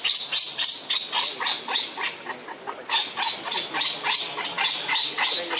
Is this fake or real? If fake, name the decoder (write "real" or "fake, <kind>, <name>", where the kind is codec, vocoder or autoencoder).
real